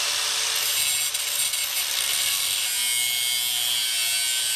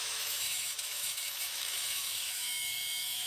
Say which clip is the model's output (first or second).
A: second